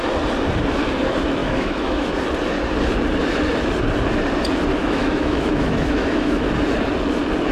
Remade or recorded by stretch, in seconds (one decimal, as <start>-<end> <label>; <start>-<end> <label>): 0.0-1.4 recorded; 1.4-2.1 remade; 2.1-4.8 recorded; 4.8-6.5 remade; 6.5-7.5 recorded